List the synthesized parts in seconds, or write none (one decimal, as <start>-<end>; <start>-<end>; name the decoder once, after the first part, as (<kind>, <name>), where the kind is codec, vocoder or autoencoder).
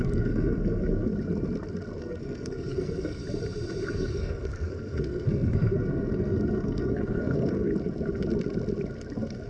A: 0.0-1.1 (codec, SNAC); 2.0-3.2; 3.9-7.7